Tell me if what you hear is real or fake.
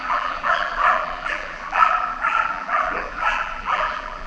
fake